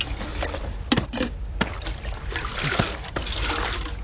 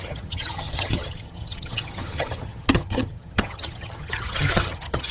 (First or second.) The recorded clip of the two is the first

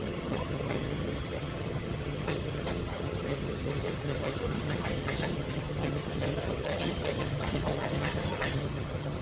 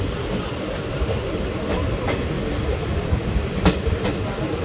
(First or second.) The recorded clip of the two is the second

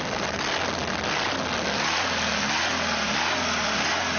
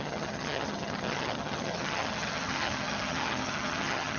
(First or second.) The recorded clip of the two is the first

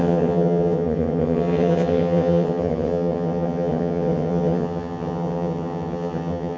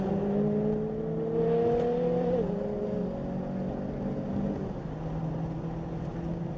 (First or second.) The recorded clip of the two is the second